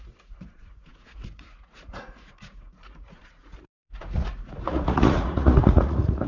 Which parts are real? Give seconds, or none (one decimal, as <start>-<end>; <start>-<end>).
none